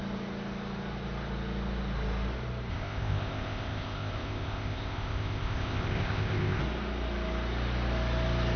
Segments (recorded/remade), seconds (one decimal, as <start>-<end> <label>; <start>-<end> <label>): 0.0-2.7 recorded; 2.7-6.6 remade; 6.6-8.6 recorded